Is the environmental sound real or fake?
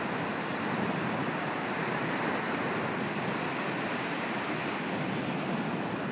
real